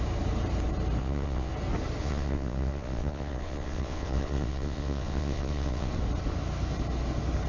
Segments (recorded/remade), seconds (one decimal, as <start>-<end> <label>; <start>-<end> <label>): 0.0-1.0 recorded; 1.0-1.5 remade; 1.5-2.0 recorded; 2.0-5.9 remade; 5.9-7.5 recorded